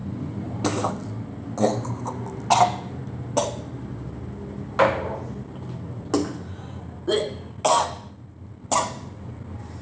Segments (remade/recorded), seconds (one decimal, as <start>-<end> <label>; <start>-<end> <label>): 0.0-9.8 recorded